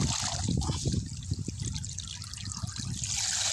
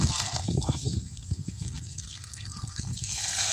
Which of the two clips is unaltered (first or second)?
first